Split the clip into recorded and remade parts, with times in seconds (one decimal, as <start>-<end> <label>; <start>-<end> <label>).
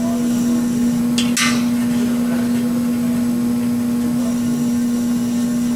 0.0-1.0 remade; 1.0-4.2 recorded; 4.2-5.8 remade